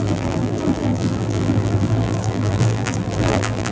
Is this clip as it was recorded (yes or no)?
no